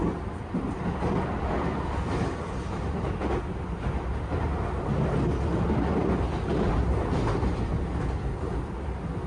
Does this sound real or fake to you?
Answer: real